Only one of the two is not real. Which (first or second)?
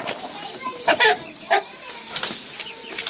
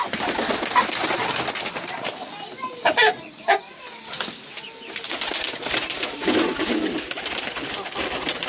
first